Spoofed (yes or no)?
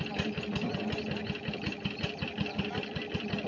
no